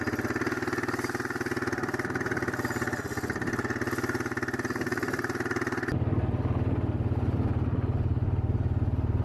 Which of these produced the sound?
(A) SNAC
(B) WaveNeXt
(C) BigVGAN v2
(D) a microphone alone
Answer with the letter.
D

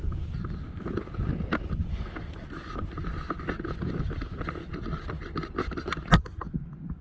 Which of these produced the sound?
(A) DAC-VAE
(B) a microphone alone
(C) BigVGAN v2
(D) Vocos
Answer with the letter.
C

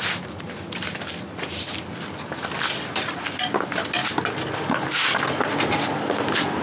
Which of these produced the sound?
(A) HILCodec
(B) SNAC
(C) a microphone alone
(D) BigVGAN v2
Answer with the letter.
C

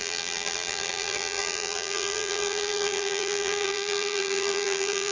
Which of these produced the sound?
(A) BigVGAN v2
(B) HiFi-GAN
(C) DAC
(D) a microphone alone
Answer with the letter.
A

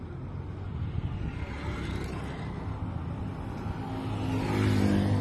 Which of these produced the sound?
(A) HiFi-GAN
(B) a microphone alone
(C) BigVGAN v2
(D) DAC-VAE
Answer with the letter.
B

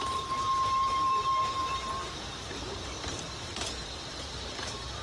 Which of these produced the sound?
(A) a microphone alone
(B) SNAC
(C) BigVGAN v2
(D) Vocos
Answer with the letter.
C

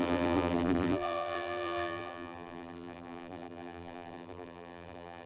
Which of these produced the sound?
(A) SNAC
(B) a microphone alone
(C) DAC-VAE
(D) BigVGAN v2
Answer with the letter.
D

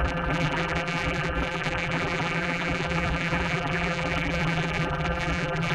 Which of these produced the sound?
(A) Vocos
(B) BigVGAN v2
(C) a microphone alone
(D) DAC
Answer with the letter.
B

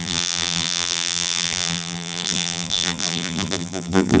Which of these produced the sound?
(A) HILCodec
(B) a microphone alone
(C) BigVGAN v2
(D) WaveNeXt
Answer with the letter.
C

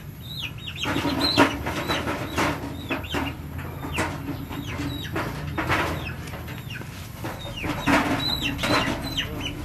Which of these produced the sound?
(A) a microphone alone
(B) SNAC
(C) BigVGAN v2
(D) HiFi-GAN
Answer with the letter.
A